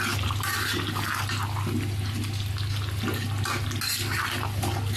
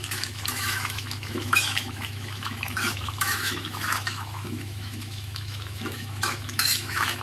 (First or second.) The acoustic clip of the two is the first